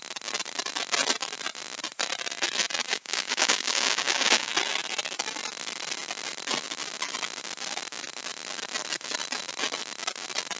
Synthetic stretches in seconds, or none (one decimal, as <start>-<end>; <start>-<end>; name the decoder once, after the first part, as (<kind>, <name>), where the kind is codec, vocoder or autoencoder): 2.9-4.5 (codec, DAC)